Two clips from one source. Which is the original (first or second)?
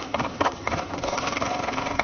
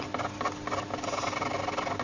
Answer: second